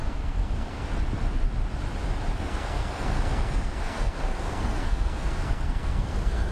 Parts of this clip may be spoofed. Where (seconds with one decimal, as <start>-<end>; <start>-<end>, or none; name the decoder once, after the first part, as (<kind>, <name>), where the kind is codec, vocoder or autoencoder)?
0.0-0.9 (codec, SNAC); 2.3-6.5